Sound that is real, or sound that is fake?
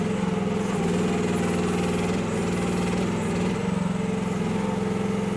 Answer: real